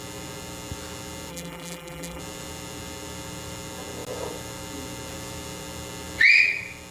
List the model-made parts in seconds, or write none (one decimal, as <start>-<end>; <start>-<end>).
1.3-2.2